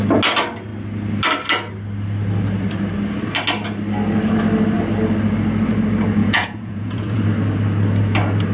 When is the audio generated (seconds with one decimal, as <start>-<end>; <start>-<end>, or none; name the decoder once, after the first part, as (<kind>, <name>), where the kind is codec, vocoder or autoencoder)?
6.2-7.2 (vocoder, Vocos)